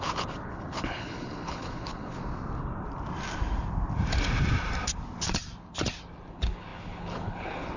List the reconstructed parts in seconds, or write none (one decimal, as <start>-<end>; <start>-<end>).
0.0-2.2; 6.3-7.8